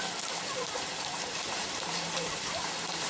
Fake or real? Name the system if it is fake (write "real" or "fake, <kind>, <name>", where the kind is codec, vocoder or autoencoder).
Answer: fake, vocoder, BigVGAN v2